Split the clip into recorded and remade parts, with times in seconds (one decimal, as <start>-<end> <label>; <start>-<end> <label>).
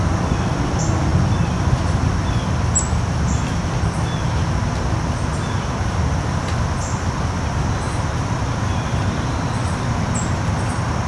0.0-11.1 recorded